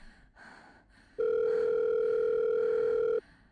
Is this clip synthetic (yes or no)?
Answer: no